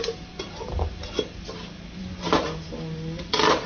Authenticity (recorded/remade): recorded